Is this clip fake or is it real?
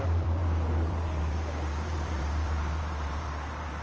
fake